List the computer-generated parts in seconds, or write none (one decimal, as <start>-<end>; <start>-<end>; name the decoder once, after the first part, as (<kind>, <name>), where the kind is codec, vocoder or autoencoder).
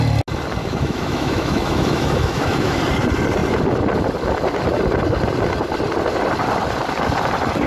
0.6-2.8 (autoencoder, DAC-VAE)